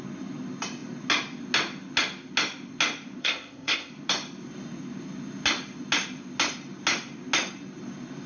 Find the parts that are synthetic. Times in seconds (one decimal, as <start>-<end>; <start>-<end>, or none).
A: 3.2-3.9